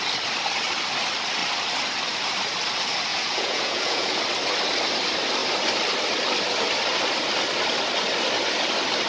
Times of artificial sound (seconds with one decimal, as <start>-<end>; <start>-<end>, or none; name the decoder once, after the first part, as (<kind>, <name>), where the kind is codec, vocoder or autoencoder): 3.1-4.2 (vocoder, Vocos)